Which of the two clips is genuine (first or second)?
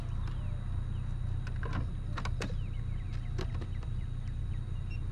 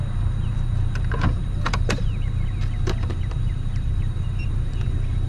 first